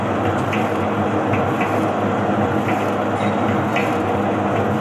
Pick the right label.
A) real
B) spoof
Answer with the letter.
A